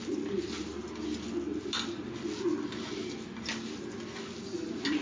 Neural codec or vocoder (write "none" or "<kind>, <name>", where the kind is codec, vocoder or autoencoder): none